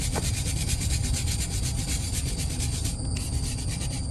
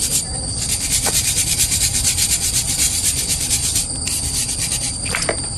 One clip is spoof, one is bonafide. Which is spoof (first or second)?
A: second